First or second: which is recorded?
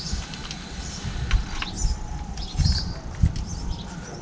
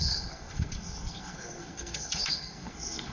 first